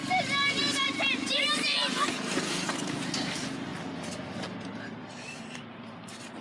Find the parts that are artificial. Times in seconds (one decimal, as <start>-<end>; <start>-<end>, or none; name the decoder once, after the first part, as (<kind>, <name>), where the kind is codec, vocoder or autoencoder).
0.0-3.7 (vocoder, BigVGAN v2); 5.5-6.4